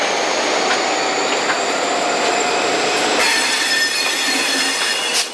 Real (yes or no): yes